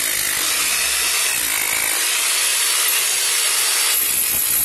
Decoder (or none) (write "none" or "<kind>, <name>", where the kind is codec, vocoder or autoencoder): none